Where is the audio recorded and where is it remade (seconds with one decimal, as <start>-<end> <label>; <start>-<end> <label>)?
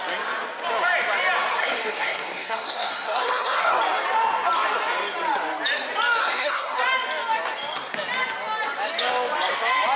0.0-1.6 recorded; 1.6-3.8 remade; 3.8-6.2 recorded; 6.2-6.8 remade; 6.8-10.0 recorded